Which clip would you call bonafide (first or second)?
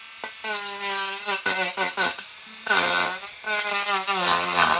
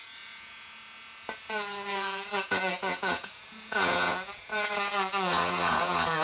first